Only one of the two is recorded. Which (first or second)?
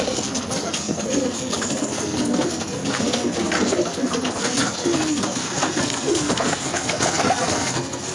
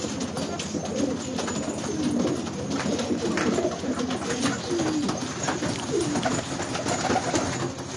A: second